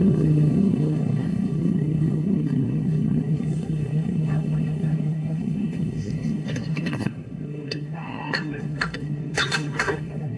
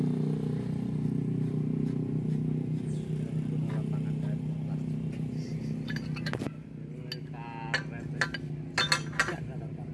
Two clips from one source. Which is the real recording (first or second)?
second